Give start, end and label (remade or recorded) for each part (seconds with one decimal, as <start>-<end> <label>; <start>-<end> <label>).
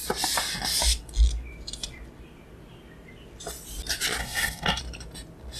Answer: 0.0-4.2 recorded; 4.2-4.8 remade; 4.8-5.6 recorded